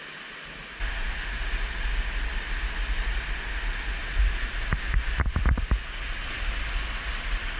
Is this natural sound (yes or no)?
yes